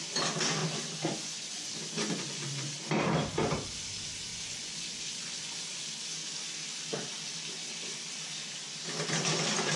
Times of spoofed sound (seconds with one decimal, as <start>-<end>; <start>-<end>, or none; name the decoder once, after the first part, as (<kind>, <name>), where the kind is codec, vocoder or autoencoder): 0.6-2.7 (vocoder, Vocos); 4.3-5.8